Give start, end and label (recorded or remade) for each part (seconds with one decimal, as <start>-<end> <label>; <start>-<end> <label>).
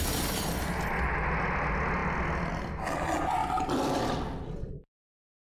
0.0-3.4 recorded; 3.4-4.7 remade; 4.7-5.5 recorded